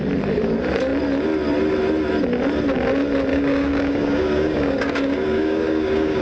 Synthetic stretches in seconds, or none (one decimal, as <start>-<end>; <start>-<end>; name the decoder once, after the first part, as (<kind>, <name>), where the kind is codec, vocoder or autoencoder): 3.3-6.2 (codec, DAC)